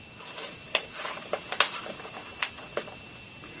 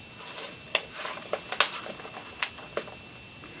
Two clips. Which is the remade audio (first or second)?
first